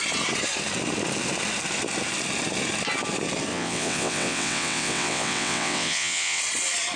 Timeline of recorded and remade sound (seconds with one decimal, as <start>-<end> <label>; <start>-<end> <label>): 0.0-3.5 recorded; 3.5-6.4 remade; 6.4-7.0 recorded